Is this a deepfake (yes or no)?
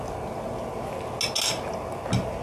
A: no